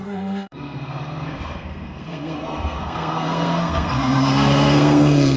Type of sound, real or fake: fake